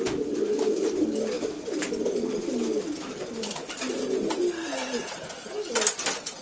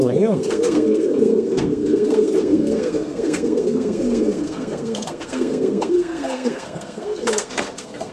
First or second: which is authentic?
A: first